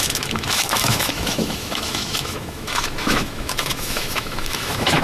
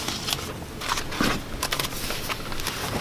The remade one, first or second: first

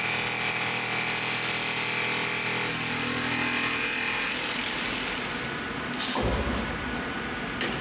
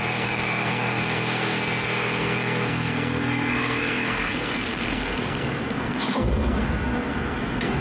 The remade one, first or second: second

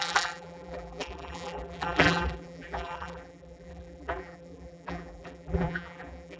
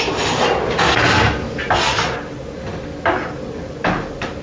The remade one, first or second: first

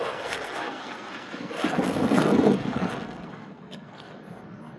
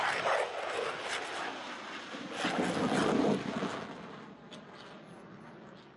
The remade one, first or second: first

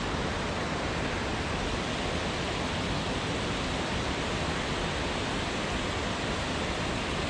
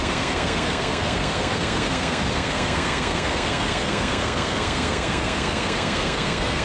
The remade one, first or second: second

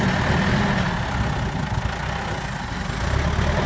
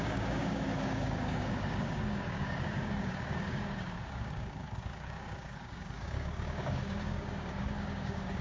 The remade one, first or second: second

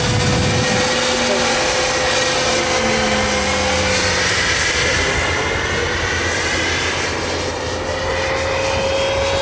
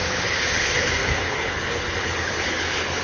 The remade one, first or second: second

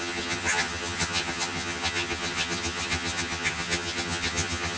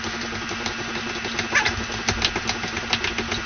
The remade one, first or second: first